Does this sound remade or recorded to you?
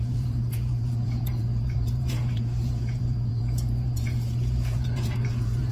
remade